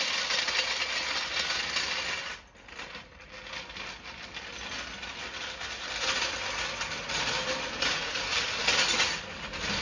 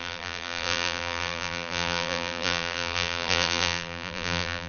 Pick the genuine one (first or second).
first